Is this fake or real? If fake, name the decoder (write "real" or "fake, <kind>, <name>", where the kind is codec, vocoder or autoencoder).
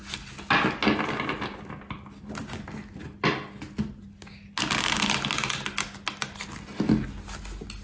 real